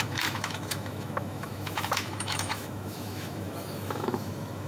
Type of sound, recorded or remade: remade